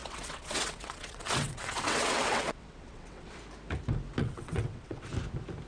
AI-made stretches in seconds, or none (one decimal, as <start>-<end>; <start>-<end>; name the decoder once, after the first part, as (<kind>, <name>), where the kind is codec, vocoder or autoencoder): 0.0-3.4 (vocoder, WaveNeXt); 4.2-5.1